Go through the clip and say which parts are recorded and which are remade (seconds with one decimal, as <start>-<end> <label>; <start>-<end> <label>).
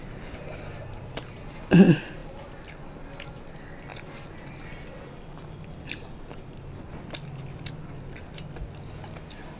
0.0-9.6 recorded